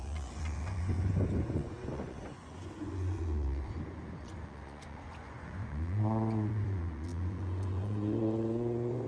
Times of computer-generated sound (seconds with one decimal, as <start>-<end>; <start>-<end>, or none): 0.0-9.1